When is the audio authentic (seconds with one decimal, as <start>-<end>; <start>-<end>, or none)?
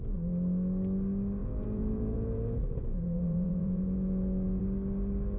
0.0-1.4; 4.6-5.4